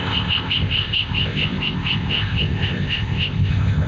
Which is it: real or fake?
fake